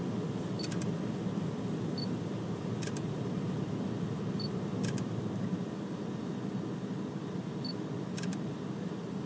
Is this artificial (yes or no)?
no